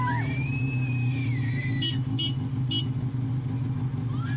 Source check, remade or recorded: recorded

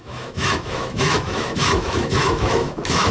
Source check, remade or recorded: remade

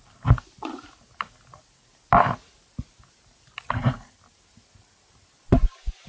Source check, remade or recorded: recorded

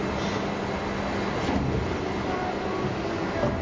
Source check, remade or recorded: recorded